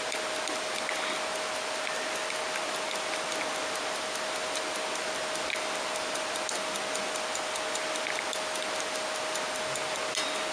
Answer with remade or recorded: recorded